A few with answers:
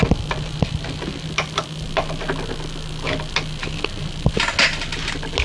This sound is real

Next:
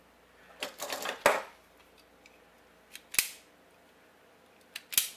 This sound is real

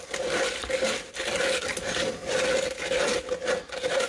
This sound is real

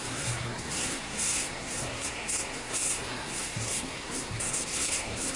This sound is fake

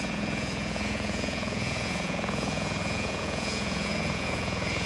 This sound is fake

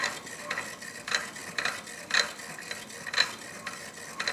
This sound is real